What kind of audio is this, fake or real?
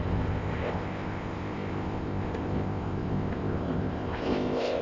fake